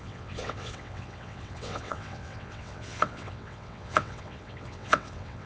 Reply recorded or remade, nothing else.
remade